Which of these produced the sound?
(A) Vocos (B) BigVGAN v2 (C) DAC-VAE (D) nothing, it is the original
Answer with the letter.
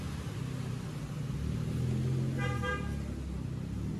D